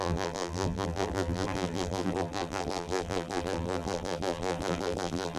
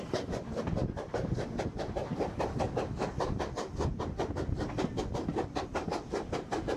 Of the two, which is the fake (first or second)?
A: first